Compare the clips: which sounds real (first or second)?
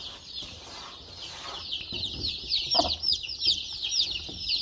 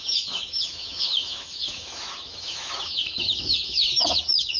first